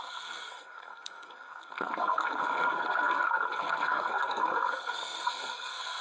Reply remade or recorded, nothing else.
remade